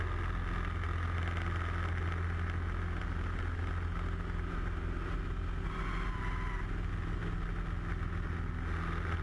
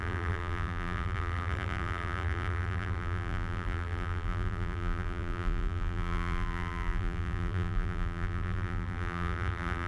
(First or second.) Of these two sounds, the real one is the first